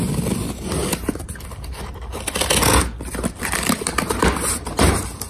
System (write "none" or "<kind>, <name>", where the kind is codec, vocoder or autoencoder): vocoder, BigVGAN v2